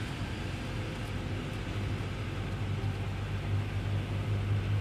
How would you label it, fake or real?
real